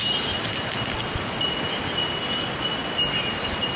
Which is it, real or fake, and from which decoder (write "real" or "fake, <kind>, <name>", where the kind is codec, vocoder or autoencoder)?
real